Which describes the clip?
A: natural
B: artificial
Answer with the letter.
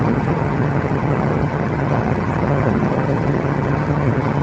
B